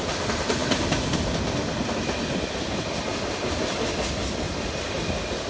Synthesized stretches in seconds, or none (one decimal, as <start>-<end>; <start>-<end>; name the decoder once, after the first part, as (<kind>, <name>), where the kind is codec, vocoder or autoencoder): none

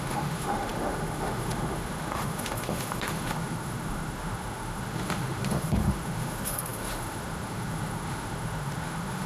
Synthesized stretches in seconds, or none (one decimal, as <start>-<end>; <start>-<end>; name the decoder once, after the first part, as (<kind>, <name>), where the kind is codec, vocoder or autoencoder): 0.0-9.3 (autoencoder, DAC-VAE)

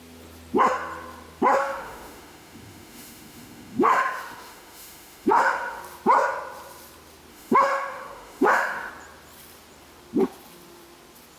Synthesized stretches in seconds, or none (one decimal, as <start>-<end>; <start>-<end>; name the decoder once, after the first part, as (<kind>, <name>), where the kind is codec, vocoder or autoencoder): 1.6-5.8 (autoencoder, DAC-VAE); 7.3-8.9

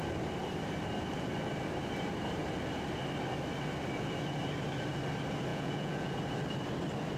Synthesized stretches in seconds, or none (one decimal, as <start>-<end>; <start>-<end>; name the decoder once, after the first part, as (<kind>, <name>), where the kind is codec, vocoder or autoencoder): 5.5-6.2 (vocoder, Vocos)

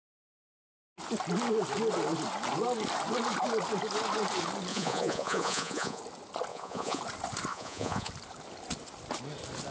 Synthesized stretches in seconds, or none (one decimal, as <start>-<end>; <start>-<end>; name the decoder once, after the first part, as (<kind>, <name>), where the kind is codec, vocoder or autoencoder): 4.7-6.0 (vocoder, Vocos); 6.5-7.0; 7.5-8.1

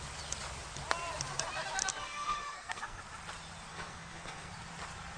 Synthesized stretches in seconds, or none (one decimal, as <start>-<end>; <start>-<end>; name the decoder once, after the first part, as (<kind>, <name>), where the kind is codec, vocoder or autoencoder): 1.9-3.0 (codec, SNAC); 3.7-4.5